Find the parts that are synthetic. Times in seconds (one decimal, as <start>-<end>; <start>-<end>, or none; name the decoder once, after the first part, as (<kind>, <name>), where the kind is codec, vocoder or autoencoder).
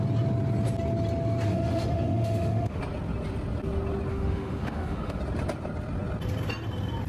1.5-2.8 (autoencoder, DAC-VAE); 4.1-5.2